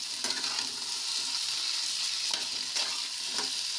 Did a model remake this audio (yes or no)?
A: no